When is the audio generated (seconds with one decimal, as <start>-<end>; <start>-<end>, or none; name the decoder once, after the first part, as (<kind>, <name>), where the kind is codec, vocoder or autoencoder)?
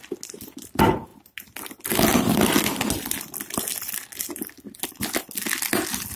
none